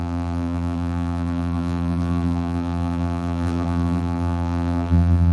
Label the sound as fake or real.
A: fake